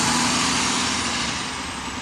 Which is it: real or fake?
real